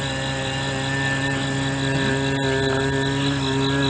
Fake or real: real